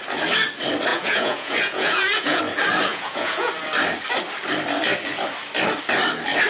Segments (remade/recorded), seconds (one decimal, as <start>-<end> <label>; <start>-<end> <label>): 0.0-0.9 recorded; 0.9-2.4 remade; 2.4-2.9 recorded; 2.9-3.5 remade; 3.5-6.5 recorded